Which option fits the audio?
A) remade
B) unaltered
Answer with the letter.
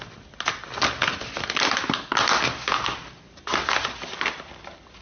B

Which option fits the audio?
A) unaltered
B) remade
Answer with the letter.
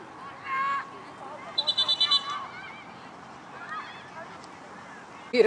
A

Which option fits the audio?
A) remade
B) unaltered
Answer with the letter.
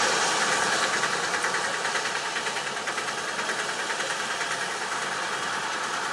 B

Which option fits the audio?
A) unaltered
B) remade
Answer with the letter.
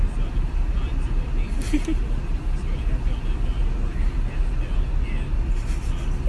A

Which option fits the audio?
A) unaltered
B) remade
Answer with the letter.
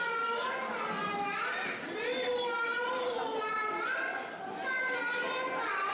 A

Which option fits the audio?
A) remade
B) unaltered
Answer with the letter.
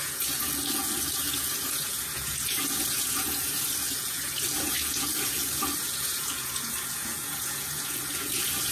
A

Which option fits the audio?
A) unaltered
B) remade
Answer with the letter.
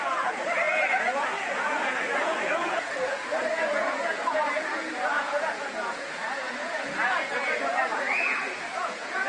B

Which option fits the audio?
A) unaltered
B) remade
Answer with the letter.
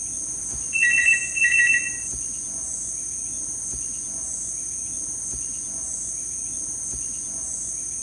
B